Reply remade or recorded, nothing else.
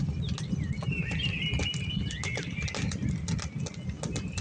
recorded